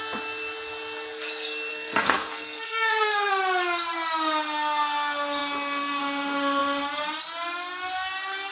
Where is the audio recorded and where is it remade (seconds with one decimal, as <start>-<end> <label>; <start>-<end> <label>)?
0.0-1.7 recorded; 1.7-3.3 remade; 3.3-8.5 recorded